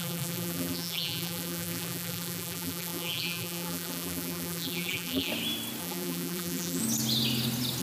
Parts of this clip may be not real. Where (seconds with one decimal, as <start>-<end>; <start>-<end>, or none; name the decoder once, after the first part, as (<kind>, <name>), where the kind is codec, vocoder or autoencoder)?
0.0-5.3 (vocoder, BigVGAN v2); 5.8-6.8